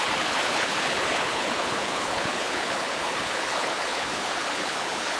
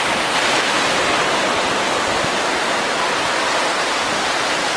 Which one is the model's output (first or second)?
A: first